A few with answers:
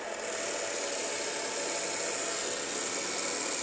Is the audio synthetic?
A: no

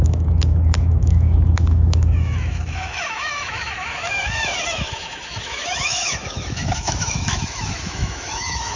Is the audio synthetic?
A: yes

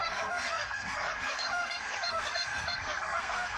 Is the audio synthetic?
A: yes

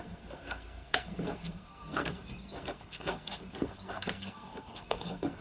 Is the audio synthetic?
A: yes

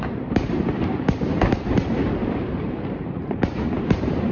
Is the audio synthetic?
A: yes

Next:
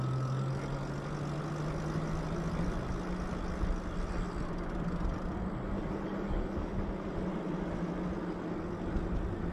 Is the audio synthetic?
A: no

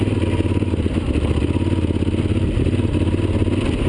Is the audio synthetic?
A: no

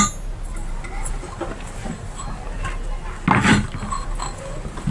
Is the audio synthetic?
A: no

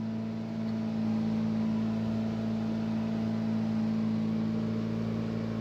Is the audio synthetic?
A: no